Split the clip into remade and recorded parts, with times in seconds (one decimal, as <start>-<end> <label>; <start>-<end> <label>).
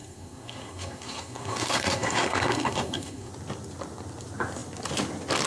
0.0-3.3 remade; 3.3-5.5 recorded